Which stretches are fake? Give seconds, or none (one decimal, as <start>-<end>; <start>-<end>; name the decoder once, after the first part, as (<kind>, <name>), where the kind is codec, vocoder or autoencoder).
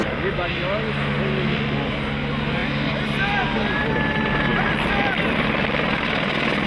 2.6-3.4 (vocoder, BigVGAN v2); 4.5-5.8